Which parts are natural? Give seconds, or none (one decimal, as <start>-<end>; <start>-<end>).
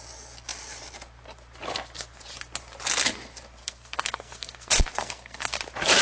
0.0-3.6; 5.6-6.0